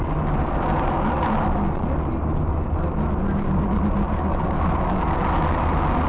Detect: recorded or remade recorded